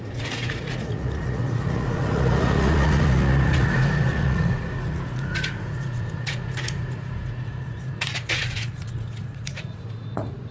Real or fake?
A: fake